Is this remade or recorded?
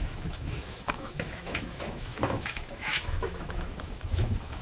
remade